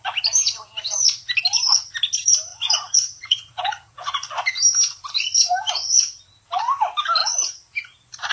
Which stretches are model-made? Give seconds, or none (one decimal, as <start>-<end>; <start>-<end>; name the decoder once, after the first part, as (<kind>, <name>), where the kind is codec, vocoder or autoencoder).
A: 2.5-4.3 (vocoder, Vocos); 7.2-7.7